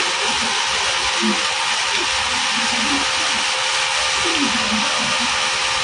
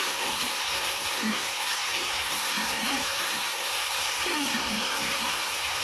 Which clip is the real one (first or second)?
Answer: first